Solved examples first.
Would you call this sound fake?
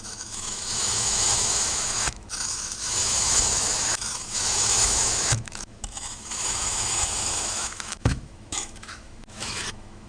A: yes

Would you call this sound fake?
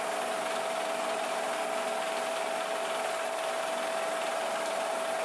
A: no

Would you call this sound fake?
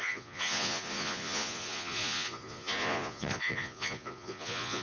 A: yes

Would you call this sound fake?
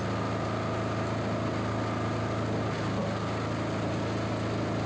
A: no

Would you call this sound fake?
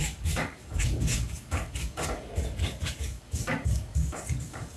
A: yes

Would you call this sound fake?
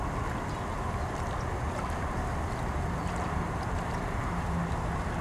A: no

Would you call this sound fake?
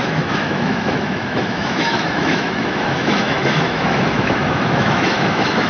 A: yes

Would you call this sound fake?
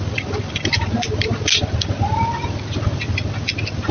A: yes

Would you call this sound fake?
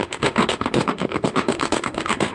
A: yes